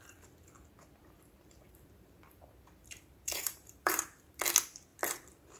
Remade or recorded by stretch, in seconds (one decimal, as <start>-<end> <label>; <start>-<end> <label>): 0.0-1.0 recorded; 1.0-4.4 remade; 4.4-5.6 recorded